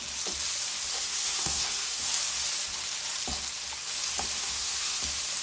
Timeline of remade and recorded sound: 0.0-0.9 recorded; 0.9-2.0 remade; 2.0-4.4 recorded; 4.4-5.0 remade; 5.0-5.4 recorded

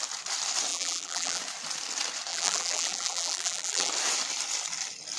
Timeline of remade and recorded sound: 0.0-0.7 recorded; 0.7-1.4 remade; 1.4-2.3 recorded; 2.3-3.9 remade; 3.9-5.2 recorded

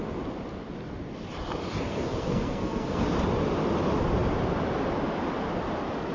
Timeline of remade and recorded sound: 0.0-1.9 recorded; 1.9-3.0 remade; 3.0-6.1 recorded